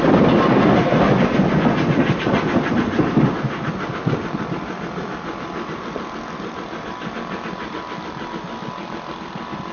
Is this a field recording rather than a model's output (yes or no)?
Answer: yes